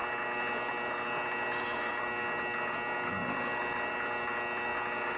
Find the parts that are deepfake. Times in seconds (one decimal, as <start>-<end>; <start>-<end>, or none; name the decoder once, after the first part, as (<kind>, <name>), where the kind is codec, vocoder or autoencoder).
none